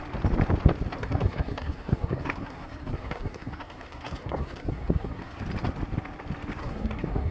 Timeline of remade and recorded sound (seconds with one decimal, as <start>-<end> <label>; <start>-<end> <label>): 0.0-1.0 recorded; 1.0-5.4 remade; 5.4-6.6 recorded; 6.6-7.3 remade